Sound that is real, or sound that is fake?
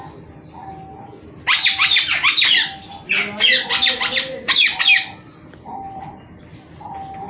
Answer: real